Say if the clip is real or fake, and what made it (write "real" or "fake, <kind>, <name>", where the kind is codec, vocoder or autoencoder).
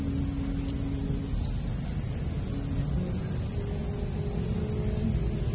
real